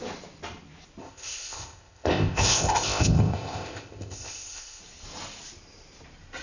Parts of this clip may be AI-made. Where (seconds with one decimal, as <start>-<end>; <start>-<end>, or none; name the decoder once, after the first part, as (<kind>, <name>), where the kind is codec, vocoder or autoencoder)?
1.0-4.8 (codec, ZipCodec)